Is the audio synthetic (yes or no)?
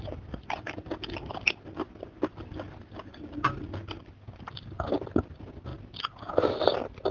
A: no